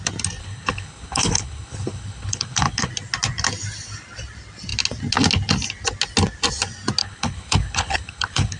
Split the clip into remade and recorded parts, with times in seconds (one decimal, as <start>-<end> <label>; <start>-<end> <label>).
0.0-0.4 recorded; 0.4-2.9 remade; 2.9-7.0 recorded; 7.0-8.6 remade